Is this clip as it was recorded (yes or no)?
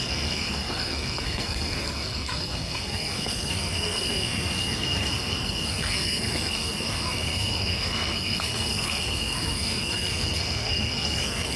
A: no